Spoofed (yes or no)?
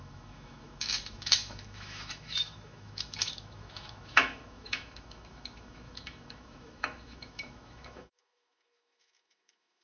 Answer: yes